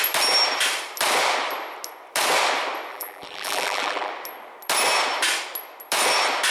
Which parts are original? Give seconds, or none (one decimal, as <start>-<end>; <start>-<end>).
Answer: 0.0-2.9; 4.1-6.5